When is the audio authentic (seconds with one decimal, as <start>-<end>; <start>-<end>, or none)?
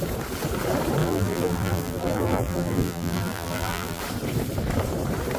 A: 0.0-1.0; 4.0-5.4